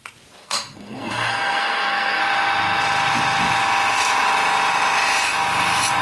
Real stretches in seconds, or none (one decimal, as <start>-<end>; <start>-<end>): 0.0-0.4; 2.2-6.0